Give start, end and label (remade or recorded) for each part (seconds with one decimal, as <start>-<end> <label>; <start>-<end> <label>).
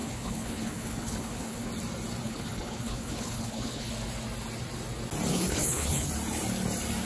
0.0-1.7 remade; 1.7-2.2 recorded; 2.2-3.9 remade; 3.9-5.3 recorded; 5.3-6.1 remade; 6.1-7.1 recorded